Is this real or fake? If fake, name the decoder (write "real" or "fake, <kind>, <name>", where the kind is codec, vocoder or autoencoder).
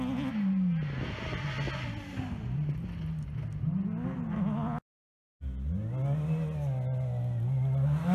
real